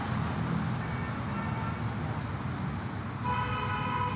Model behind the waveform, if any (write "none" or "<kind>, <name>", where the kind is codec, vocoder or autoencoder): none